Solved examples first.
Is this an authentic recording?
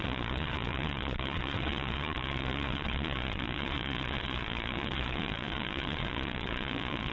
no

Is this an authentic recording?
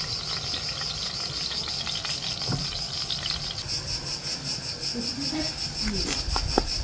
yes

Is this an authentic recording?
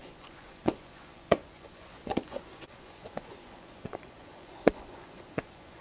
no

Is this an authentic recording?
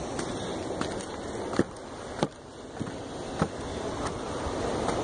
yes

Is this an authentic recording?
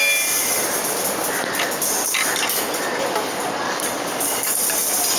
yes